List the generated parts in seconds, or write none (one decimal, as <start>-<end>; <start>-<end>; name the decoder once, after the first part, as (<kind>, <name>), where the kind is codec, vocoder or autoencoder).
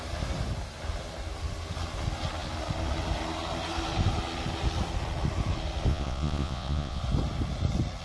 5.9-7.0 (vocoder, Vocos)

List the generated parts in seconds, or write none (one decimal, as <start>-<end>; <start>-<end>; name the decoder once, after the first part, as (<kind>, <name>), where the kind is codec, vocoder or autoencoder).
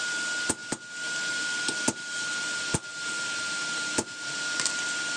none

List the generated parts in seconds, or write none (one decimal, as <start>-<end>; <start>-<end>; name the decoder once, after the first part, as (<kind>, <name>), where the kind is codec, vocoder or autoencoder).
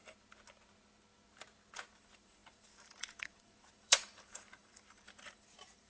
2.0-5.9 (vocoder, BigVGAN v2)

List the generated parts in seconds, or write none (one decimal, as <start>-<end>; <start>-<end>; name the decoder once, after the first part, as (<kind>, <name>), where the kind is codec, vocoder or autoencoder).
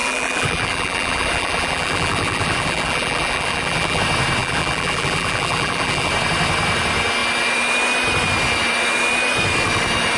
0.0-4.0 (vocoder, BigVGAN v2); 4.4-6.1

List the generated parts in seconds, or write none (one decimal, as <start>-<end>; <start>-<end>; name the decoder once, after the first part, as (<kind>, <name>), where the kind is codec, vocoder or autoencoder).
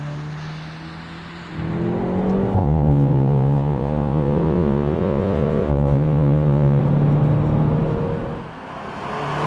2.6-6.8 (vocoder, Vocos)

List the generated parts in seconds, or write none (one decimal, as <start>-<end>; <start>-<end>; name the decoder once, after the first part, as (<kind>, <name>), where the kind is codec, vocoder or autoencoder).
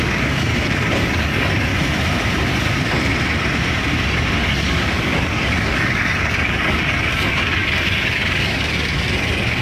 0.0-1.7 (codec, DAC); 4.4-9.6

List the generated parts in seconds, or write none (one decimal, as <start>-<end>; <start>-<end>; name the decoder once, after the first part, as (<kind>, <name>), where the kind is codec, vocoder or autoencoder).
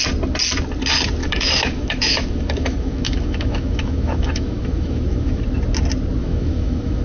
1.2-5.4 (autoencoder, DAC-VAE); 6.2-7.0